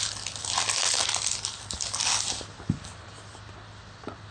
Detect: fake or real real